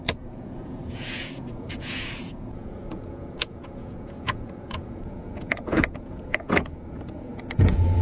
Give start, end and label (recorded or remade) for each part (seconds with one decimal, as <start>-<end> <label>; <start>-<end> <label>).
0.0-8.0 remade